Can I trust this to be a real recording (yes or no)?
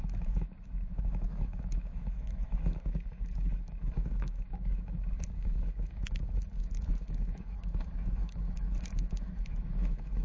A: no